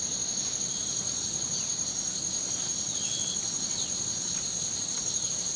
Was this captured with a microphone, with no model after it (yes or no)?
yes